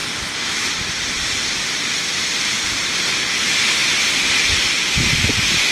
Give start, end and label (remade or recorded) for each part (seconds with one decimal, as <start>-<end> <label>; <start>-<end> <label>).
0.0-5.7 recorded